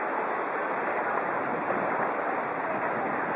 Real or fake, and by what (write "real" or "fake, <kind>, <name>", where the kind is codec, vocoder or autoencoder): real